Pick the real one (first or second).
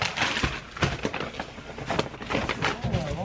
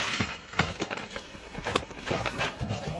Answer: first